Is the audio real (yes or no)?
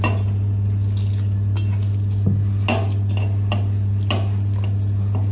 yes